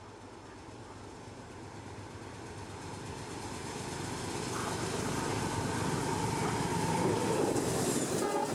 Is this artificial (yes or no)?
no